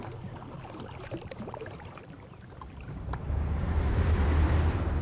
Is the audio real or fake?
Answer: fake